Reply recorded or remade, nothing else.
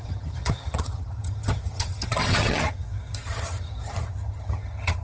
remade